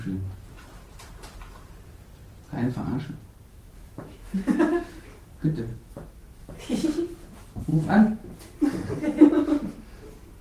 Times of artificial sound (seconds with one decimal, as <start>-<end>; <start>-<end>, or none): 3.5-5.3; 5.7-6.4; 7.7-8.3